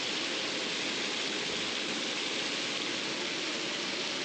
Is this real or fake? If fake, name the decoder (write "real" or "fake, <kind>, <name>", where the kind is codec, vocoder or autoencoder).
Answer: real